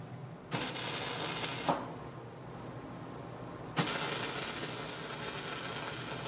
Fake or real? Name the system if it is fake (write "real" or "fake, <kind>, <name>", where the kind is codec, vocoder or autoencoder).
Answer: real